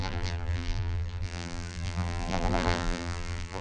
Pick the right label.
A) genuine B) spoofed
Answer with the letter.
B